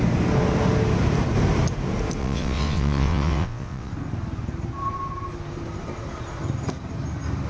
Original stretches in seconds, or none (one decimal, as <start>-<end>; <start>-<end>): 0.0-2.2; 3.9-7.5